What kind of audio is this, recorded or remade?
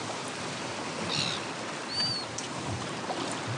recorded